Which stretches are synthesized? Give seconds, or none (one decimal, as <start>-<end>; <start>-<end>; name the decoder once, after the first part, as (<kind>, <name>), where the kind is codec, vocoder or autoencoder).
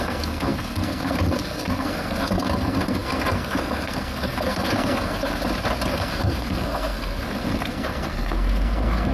0.0-5.4 (codec, SNAC); 5.9-9.1